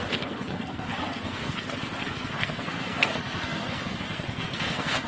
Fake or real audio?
fake